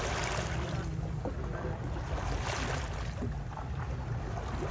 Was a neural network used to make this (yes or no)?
no